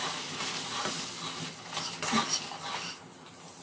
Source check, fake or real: real